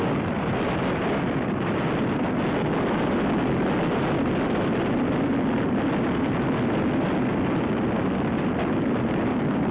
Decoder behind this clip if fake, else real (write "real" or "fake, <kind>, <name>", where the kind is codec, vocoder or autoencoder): real